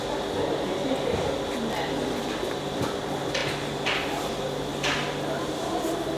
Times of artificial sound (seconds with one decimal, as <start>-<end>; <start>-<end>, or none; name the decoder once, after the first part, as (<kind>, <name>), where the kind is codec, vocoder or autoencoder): none